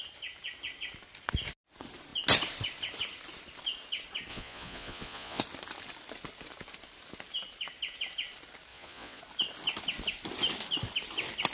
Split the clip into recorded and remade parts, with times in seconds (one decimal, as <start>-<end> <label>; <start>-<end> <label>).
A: 0.0-4.3 recorded; 4.3-5.4 remade; 5.4-8.7 recorded; 8.7-9.2 remade; 9.2-11.5 recorded